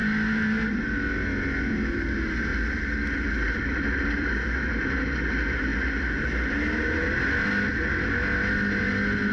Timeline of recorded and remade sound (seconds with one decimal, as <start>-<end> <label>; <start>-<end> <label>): 0.0-2.5 recorded; 2.5-4.3 remade; 4.3-9.3 recorded